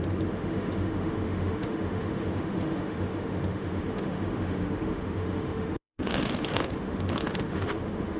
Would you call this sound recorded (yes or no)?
no